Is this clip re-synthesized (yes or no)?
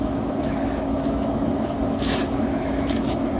yes